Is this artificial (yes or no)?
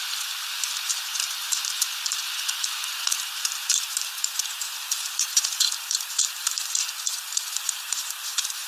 yes